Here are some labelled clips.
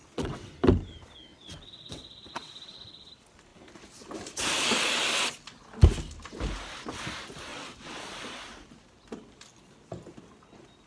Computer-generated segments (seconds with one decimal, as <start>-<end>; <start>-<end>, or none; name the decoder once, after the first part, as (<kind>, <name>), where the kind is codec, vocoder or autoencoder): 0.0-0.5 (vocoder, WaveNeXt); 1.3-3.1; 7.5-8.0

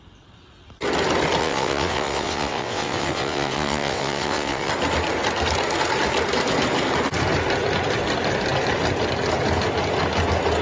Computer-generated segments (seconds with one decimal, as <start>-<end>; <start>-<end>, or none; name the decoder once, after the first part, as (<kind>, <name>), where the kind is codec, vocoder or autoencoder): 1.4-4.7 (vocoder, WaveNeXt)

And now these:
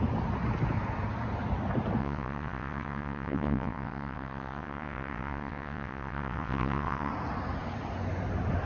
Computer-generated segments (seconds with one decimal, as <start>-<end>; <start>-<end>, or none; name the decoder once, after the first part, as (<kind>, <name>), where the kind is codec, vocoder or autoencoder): 2.0-7.1 (vocoder, WaveNeXt)

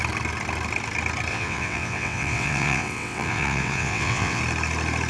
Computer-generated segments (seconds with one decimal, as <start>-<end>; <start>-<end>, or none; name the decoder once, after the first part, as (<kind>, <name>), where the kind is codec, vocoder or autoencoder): 1.3-4.4 (vocoder, WaveNeXt)

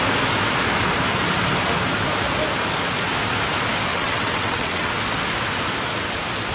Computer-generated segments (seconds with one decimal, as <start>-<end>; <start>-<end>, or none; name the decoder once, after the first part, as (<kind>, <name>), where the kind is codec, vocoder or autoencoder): 3.9-4.9 (vocoder, WaveNeXt)

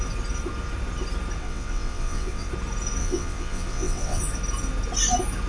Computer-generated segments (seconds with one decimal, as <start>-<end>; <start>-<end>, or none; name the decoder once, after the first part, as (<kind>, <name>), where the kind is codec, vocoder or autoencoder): 1.4-2.5 (vocoder, WaveNeXt); 3.0-4.2

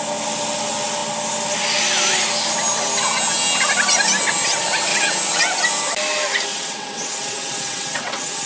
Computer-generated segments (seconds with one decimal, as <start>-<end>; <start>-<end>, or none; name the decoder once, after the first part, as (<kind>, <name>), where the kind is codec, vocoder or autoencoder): 4.9-5.4 (vocoder, WaveNeXt); 6.5-8.5

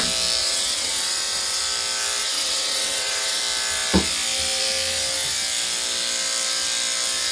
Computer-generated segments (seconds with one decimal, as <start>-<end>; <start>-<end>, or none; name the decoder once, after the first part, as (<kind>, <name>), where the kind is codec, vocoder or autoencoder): 0.4-1.6 (vocoder, WaveNeXt); 2.2-3.4